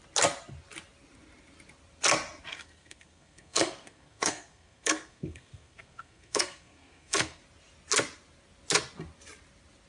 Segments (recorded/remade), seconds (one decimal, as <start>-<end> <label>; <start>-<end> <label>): 0.0-2.5 recorded; 2.5-7.4 remade; 7.4-9.9 recorded